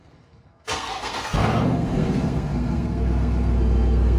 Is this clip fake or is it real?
fake